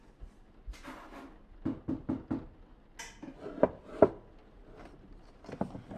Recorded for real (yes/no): yes